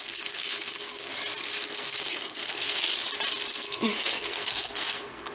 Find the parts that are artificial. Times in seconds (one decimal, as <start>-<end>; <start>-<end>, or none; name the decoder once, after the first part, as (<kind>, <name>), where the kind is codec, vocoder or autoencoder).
0.0-1.1 (codec, SNAC); 1.6-2.9; 3.5-5.3